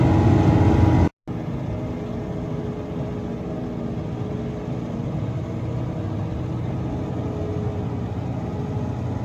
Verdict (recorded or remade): recorded